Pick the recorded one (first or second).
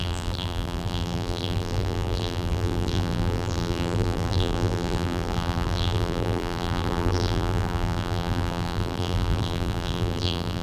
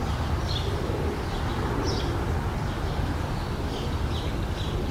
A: second